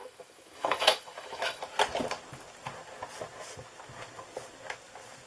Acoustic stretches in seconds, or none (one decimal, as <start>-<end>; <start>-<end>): 1.6-5.3